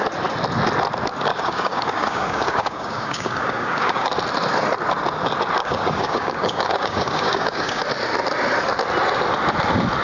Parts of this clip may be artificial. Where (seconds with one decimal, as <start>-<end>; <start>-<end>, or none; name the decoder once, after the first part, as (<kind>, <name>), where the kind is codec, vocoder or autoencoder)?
1.3-4.1 (codec, DAC); 5.6-7.8